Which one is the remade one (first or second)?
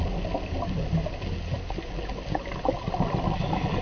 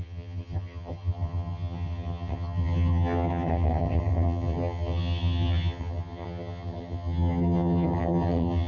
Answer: second